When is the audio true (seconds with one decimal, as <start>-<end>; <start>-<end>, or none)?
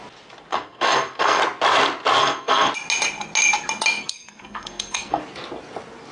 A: 0.0-0.5; 1.4-2.2; 2.7-4.0; 5.2-6.1